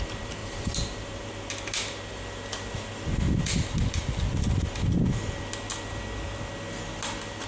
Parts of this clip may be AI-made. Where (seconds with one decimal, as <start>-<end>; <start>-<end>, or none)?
0.4-1.3